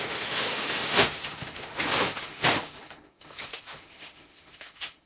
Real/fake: fake